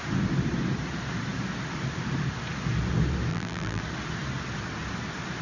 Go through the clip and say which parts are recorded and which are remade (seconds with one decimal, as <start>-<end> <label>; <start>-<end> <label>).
0.0-3.3 recorded; 3.3-3.8 remade; 3.8-5.4 recorded